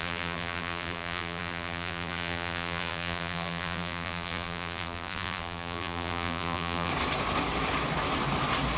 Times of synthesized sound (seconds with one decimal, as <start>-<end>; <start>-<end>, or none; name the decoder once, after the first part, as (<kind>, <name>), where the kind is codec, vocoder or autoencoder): 0.0-6.9 (vocoder, BigVGAN v2)